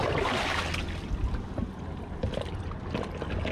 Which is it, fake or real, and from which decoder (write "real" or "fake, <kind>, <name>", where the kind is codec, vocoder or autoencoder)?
real